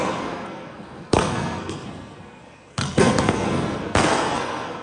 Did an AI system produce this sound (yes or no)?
yes